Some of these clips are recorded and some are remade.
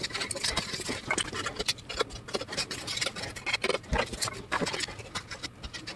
recorded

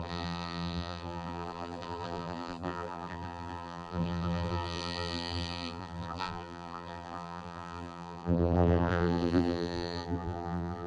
remade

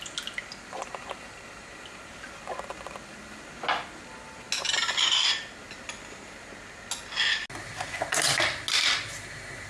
recorded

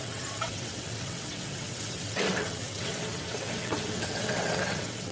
remade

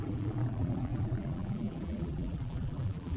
remade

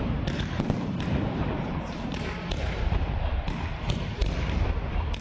remade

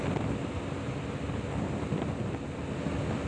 recorded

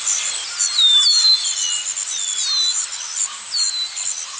recorded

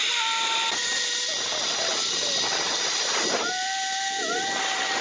recorded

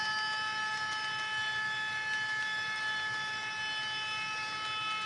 recorded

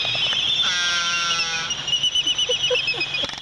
recorded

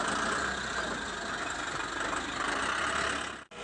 recorded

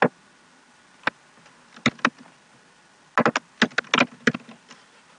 recorded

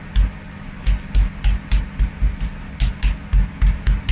recorded